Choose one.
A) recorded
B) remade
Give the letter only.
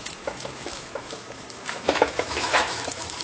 B